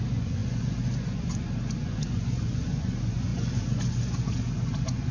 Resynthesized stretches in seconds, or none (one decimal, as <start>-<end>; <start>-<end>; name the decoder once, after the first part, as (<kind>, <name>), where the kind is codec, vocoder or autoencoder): 0.0-5.1 (vocoder, Vocos)